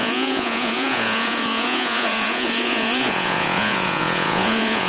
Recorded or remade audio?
remade